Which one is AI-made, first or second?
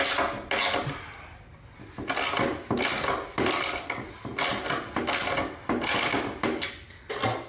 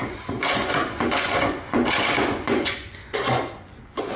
second